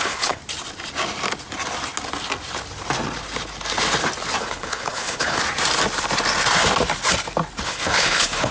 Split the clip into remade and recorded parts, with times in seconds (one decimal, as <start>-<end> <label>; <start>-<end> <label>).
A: 0.0-0.4 remade; 0.4-4.4 recorded; 4.4-5.4 remade; 5.4-7.6 recorded; 7.6-8.5 remade